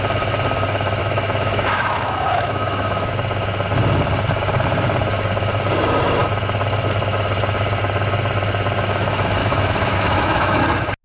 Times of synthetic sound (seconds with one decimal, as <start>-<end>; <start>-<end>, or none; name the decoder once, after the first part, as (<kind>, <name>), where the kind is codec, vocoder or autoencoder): 1.0-3.1 (autoencoder, DAC-VAE); 9.4-10.6